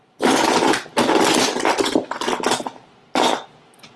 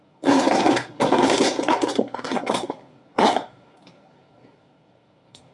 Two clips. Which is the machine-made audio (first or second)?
second